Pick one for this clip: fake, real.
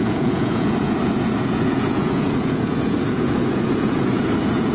fake